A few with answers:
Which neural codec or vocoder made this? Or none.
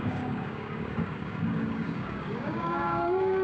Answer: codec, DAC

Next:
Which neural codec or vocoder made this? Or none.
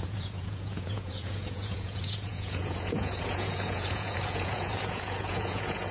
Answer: vocoder, Vocos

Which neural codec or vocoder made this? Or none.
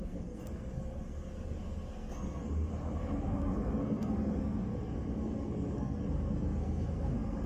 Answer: codec, SNAC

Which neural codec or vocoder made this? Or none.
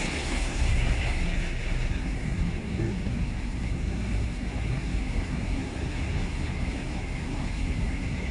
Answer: codec, SNAC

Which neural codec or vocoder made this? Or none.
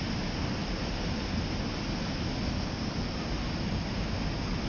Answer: none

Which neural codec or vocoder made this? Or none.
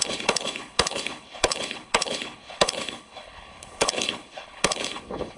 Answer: codec, HILCodec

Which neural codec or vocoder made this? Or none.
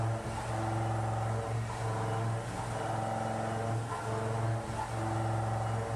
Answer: none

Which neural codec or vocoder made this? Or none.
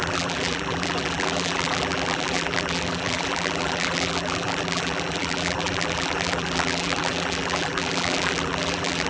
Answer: vocoder, BigVGAN v2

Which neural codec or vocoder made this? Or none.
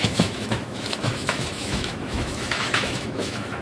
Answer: autoencoder, DAC-VAE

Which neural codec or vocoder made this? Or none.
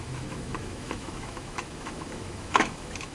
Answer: autoencoder, DAC-VAE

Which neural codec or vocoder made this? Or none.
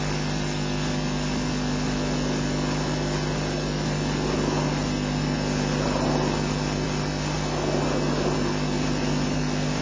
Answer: none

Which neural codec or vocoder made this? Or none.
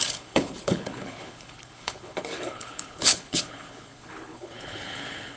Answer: codec, HILCodec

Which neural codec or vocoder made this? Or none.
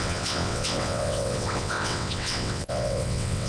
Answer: vocoder, WaveNeXt